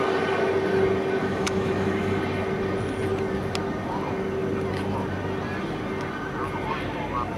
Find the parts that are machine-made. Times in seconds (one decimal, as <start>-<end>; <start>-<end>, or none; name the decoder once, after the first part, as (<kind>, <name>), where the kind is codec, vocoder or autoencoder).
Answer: 1.2-2.2 (autoencoder, DAC-VAE)